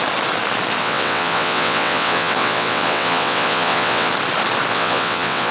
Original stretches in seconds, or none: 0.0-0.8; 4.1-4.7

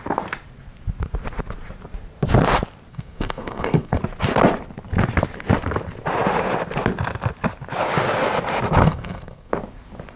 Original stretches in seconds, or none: 0.0-2.9; 4.0-8.8; 9.5-10.2

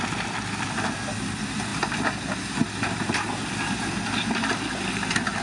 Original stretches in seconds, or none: 0.0-5.4

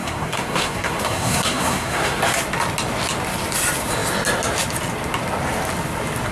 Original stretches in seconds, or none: 2.2-6.3